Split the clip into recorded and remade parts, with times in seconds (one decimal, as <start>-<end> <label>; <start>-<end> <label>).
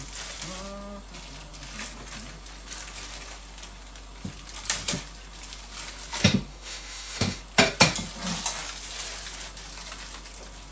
0.0-6.5 recorded; 6.5-7.4 remade; 7.4-10.7 recorded